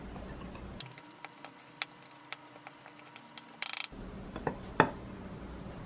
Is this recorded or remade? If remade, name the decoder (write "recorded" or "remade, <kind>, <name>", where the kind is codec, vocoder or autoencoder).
recorded